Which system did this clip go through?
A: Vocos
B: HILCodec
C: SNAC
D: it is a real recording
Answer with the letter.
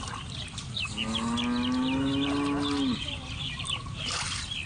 D